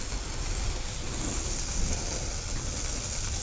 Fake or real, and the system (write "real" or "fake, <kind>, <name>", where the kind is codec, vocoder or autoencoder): real